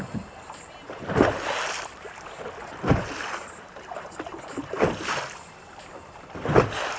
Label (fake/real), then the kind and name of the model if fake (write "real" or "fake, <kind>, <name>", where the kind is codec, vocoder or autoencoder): real